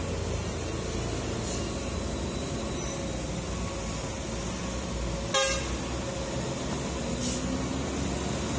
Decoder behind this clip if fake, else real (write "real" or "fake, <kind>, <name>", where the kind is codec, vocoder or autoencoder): real